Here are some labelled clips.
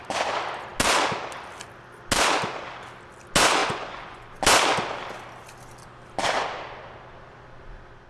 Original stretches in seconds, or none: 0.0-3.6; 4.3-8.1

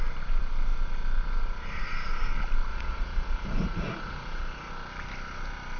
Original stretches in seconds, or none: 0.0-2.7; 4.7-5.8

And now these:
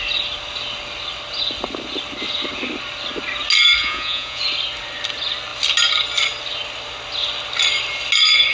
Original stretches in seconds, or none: 0.0-3.8; 4.4-8.5

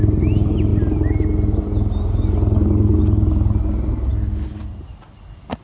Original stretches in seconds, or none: 0.0-5.6

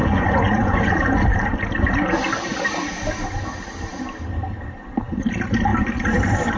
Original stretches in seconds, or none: 1.0-6.6

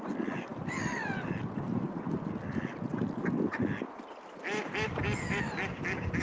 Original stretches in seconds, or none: 0.0-6.2

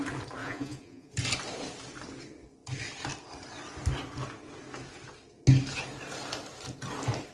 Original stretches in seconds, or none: 0.0-0.4; 1.1-7.3

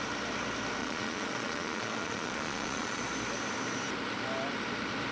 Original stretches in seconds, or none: 0.0-0.8; 3.0-5.1